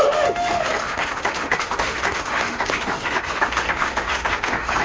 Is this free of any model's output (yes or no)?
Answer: no